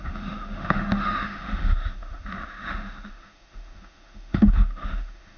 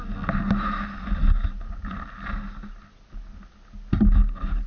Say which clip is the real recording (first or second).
second